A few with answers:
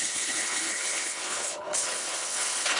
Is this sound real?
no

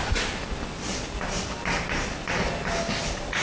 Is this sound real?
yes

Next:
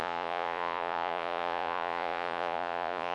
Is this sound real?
no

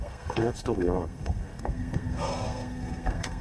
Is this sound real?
no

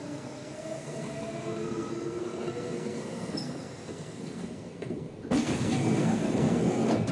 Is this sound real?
no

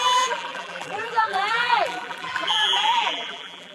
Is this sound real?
no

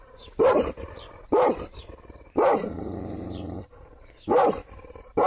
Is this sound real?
no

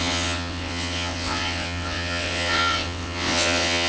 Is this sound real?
no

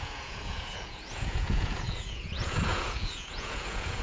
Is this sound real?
no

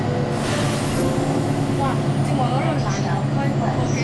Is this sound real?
yes